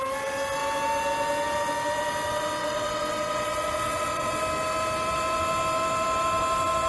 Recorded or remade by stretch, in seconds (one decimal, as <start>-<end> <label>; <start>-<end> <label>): 0.0-2.6 recorded; 2.6-4.4 remade; 4.4-6.9 recorded